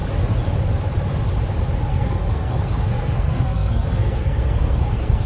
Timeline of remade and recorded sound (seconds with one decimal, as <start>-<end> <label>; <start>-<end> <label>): 0.0-1.9 recorded; 1.9-5.3 remade